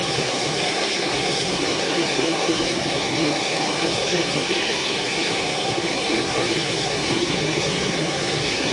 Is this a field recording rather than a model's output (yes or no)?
no